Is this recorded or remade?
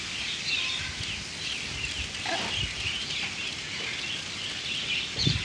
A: recorded